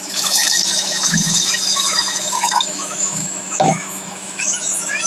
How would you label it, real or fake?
fake